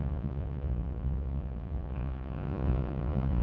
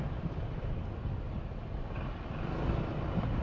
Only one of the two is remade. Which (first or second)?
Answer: first